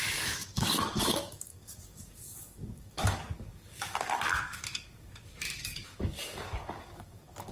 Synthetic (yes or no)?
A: yes